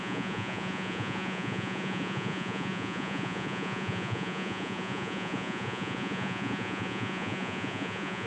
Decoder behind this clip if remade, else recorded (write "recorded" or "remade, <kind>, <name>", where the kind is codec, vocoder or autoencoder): remade, vocoder, Vocos